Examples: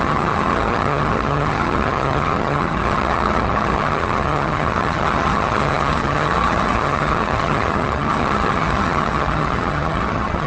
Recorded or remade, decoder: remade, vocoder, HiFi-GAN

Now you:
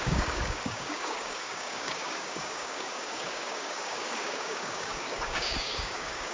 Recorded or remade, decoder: remade, codec, DAC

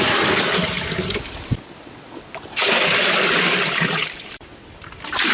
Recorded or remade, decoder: recorded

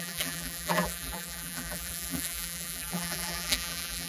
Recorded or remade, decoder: remade, vocoder, BigVGAN v2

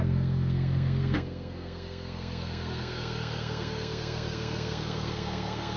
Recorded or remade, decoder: remade, codec, SNAC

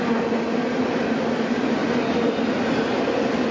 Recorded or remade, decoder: recorded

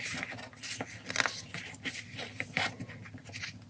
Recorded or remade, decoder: recorded